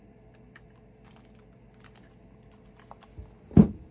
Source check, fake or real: real